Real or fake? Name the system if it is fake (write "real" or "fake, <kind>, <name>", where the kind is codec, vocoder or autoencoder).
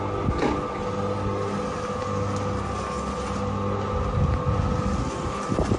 real